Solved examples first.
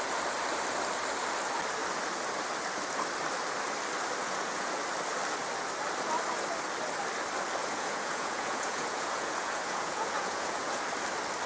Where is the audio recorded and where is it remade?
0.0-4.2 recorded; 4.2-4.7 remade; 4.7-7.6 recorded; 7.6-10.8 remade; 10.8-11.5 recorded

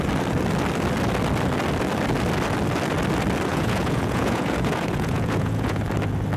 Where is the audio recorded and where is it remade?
0.0-3.5 recorded; 3.5-5.8 remade; 5.8-6.4 recorded

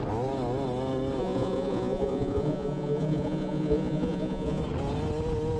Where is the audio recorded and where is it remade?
0.0-1.2 recorded; 1.2-4.6 remade; 4.6-5.6 recorded

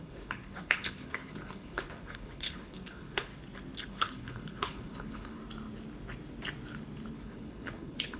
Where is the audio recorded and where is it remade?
0.0-3.3 remade; 3.3-3.9 recorded; 3.9-5.4 remade; 5.4-7.1 recorded; 7.1-8.2 remade

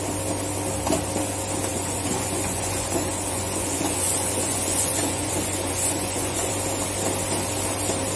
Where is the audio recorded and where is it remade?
0.0-1.7 recorded; 1.7-6.5 remade; 6.5-8.2 recorded

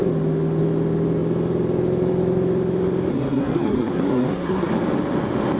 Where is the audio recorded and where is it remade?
0.0-3.1 recorded; 3.1-4.7 remade; 4.7-5.6 recorded